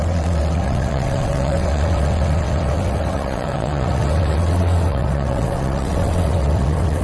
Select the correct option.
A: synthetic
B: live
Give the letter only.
A